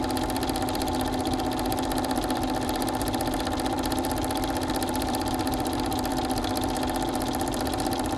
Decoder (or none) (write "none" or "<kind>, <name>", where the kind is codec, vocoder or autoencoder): vocoder, BigVGAN v2